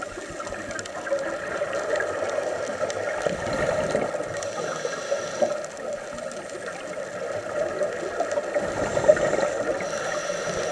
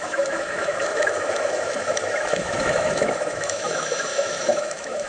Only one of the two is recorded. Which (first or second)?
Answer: first